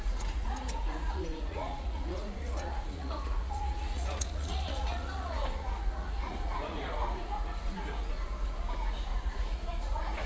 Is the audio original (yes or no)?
no